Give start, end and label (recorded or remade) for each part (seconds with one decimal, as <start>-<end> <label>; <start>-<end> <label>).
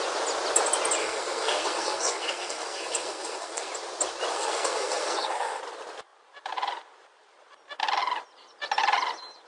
0.0-1.0 recorded; 1.0-3.7 remade; 3.7-4.3 recorded; 4.3-5.6 remade; 5.6-9.5 recorded